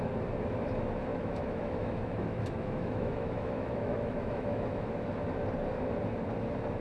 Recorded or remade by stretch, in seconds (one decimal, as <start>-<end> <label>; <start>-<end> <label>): 0.0-1.1 recorded; 1.1-5.2 remade; 5.2-6.8 recorded